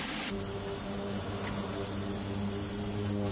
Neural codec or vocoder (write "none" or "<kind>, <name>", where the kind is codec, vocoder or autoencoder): none